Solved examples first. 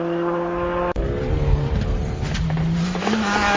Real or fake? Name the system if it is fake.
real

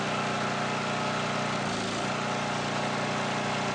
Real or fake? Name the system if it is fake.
real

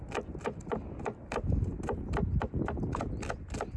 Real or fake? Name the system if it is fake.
real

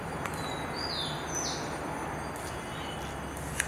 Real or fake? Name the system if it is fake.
real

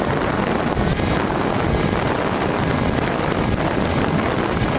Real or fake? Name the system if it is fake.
fake, vocoder, BigVGAN v2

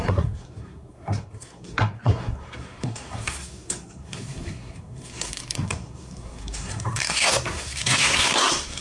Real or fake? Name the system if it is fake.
fake, codec, SNAC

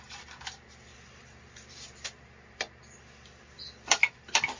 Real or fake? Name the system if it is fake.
fake, vocoder, BigVGAN v2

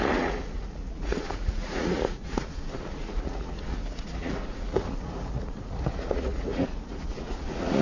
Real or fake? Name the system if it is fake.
fake, vocoder, Vocos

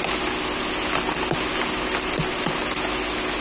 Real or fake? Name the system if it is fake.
real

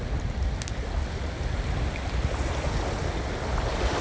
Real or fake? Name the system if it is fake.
real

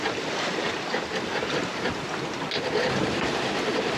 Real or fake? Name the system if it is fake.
real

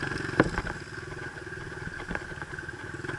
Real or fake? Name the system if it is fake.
real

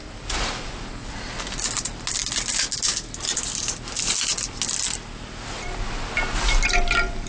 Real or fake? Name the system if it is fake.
real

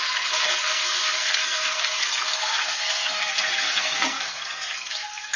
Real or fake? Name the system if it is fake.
fake, codec, SNAC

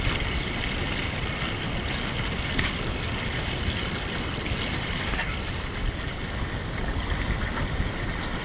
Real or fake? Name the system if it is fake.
real